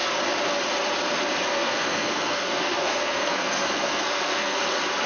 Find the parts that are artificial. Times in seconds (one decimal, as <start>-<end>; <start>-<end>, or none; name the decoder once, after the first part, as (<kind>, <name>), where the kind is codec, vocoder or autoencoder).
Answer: 1.5-4.6 (codec, SNAC)